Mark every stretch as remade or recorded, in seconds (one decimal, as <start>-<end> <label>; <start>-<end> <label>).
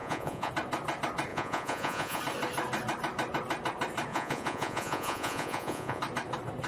0.0-0.5 remade; 0.5-1.3 recorded; 1.3-2.2 remade; 2.2-4.1 recorded; 4.1-6.0 remade; 6.0-6.7 recorded